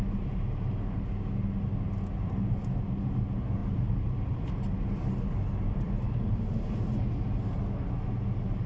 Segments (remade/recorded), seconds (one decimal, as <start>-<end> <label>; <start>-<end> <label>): 0.0-3.6 recorded; 3.6-4.5 remade; 4.5-8.7 recorded